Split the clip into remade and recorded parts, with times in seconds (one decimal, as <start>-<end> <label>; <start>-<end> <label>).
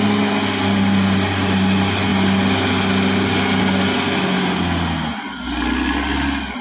0.0-6.6 recorded